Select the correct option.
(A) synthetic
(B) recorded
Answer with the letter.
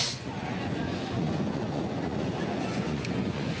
A